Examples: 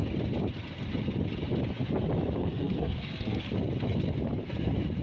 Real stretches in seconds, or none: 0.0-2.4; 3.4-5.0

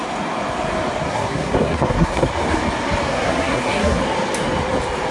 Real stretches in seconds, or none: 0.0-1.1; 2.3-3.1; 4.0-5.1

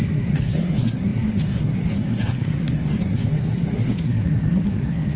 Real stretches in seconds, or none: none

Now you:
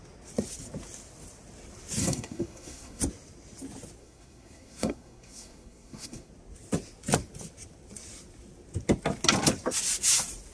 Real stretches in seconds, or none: 0.0-2.0; 3.0-4.0; 6.3-10.5

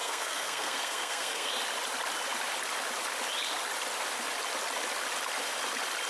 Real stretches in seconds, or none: 1.5-6.1

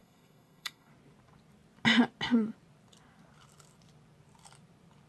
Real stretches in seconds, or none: 0.9-5.1